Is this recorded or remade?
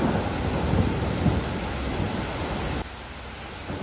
recorded